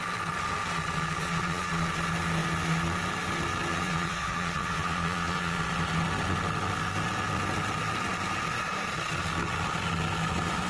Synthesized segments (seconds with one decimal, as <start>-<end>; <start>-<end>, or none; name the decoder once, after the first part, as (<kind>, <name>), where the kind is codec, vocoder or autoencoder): 1.2-1.7 (vocoder, Vocos); 3.7-5.6